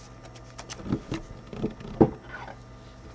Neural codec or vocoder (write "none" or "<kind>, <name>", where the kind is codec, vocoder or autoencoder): none